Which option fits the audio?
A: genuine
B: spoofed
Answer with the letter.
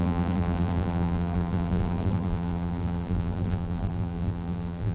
B